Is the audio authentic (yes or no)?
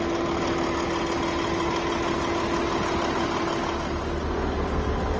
yes